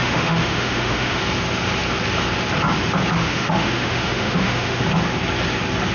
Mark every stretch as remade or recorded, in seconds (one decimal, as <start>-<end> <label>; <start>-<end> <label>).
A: 0.0-1.2 remade; 1.2-3.2 recorded; 3.2-4.8 remade; 4.8-5.9 recorded